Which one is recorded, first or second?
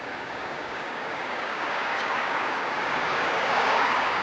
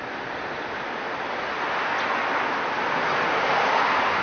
second